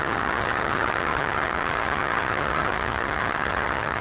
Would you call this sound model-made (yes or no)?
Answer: yes